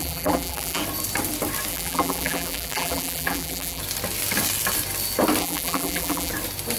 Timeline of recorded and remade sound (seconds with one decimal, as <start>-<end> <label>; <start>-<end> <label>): 0.0-0.8 remade; 0.8-1.7 recorded; 1.7-3.8 remade; 3.8-5.4 recorded; 5.4-6.3 remade; 6.3-6.8 recorded